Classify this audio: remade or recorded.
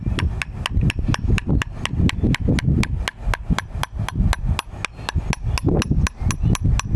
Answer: recorded